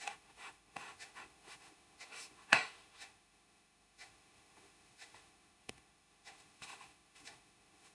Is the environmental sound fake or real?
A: fake